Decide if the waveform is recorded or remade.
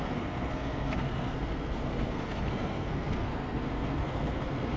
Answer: remade